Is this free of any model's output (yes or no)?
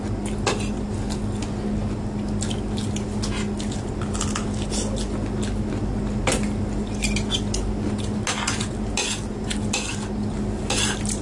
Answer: yes